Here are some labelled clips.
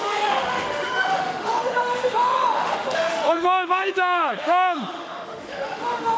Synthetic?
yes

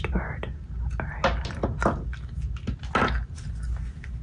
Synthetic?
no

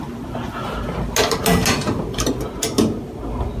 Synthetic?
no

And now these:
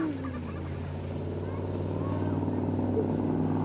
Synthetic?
no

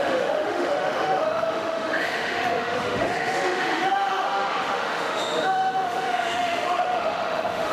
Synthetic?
yes